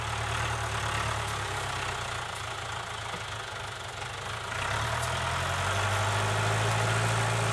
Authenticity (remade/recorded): recorded